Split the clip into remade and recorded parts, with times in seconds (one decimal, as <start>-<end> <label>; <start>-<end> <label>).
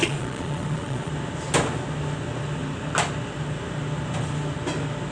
0.0-1.1 remade; 1.1-5.1 recorded